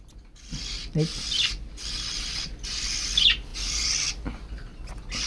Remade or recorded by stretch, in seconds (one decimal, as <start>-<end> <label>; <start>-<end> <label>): 0.0-5.3 recorded